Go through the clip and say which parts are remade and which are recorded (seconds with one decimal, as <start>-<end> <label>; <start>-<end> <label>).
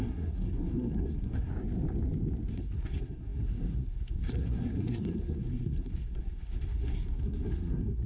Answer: 0.0-1.5 remade; 1.5-2.5 recorded; 2.5-8.1 remade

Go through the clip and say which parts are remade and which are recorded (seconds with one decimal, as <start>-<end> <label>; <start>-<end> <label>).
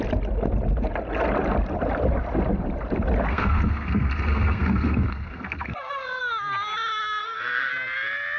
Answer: 0.0-3.3 recorded; 3.3-6.2 remade; 6.2-7.2 recorded; 7.2-7.7 remade; 7.7-8.4 recorded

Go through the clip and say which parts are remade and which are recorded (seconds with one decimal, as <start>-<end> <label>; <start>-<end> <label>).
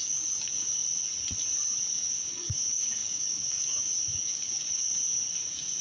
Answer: 0.0-0.8 remade; 0.8-1.9 recorded; 1.9-5.8 remade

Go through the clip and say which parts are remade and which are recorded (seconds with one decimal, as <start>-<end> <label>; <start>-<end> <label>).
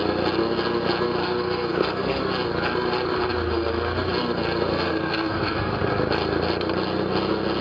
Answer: 0.0-1.2 recorded; 1.2-2.2 remade; 2.2-4.7 recorded; 4.7-5.7 remade; 5.7-7.6 recorded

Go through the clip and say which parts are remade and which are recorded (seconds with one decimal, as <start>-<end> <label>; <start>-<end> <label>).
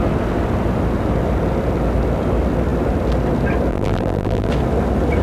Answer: 0.0-3.7 recorded; 3.7-4.5 remade; 4.5-5.2 recorded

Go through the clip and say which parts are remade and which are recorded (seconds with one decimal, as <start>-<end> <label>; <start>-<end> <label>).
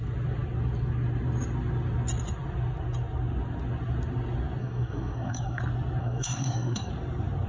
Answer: 0.0-4.6 recorded; 4.6-5.6 remade; 5.6-6.0 recorded; 6.0-6.9 remade; 6.9-7.5 recorded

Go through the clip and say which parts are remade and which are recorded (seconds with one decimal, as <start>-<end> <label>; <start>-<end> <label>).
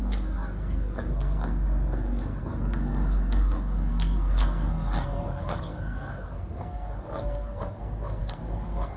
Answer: 0.0-9.0 remade